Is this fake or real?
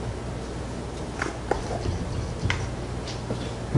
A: real